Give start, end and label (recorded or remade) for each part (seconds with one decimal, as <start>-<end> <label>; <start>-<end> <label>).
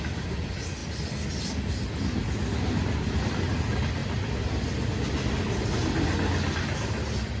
0.0-7.4 recorded